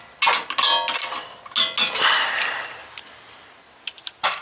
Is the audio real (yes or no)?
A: yes